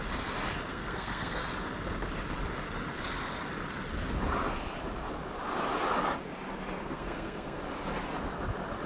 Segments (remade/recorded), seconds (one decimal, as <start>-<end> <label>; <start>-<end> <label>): 0.0-0.7 recorded; 0.7-1.4 remade; 1.4-6.8 recorded; 6.8-7.6 remade; 7.6-8.9 recorded